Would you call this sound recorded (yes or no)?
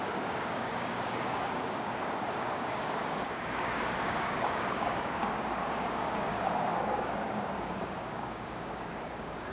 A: no